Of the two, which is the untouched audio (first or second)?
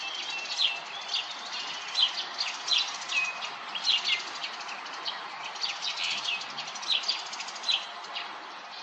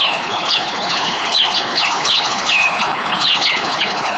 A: first